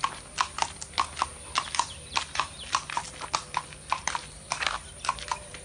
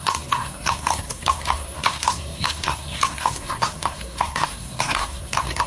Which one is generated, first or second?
second